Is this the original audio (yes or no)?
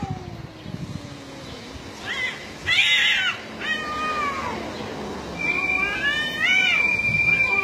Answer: yes